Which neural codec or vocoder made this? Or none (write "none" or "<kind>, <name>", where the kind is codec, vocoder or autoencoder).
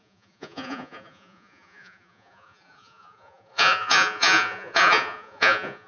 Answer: vocoder, Vocos